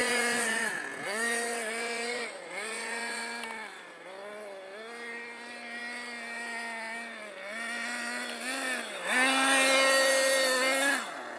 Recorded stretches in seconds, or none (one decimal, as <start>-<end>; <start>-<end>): 3.2-11.4